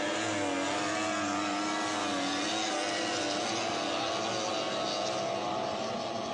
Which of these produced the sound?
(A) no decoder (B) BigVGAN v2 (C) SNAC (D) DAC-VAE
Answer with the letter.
A